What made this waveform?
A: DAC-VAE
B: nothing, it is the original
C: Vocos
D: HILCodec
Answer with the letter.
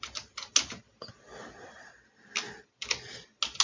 B